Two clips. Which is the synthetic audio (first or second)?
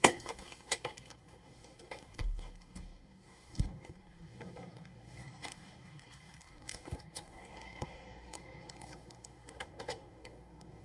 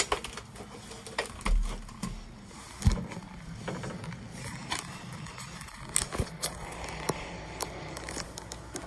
first